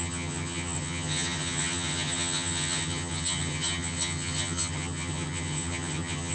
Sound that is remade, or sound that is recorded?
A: remade